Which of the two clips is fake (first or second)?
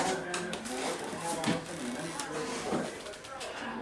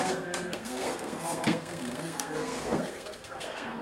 second